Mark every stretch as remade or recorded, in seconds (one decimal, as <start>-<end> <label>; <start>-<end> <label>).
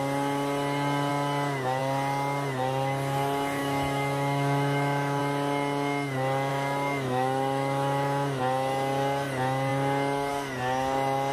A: 0.0-3.6 recorded; 3.6-5.2 remade; 5.2-6.5 recorded; 6.5-8.4 remade; 8.4-11.3 recorded